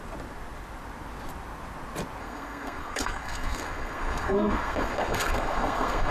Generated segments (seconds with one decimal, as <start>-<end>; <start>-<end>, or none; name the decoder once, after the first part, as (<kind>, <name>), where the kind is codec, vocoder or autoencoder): 2.2-6.1 (codec, SNAC)